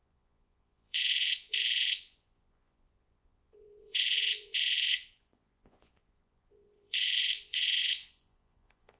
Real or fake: fake